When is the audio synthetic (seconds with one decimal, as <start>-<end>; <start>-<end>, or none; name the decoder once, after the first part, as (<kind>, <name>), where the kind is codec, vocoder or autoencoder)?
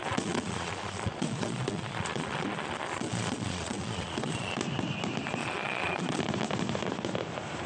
0.0-4.6 (vocoder, Vocos); 5.4-6.2